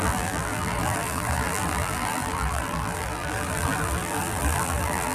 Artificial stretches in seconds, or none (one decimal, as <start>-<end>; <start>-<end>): 0.0-5.1